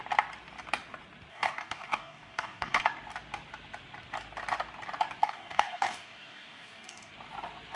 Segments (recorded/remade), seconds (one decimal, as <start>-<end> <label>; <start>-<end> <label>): 0.0-1.3 recorded; 1.3-2.8 remade; 2.8-5.2 recorded; 5.2-7.1 remade; 7.1-7.8 recorded